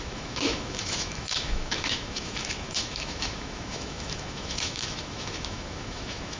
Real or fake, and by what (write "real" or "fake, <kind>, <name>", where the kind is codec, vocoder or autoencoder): fake, autoencoder, DAC-VAE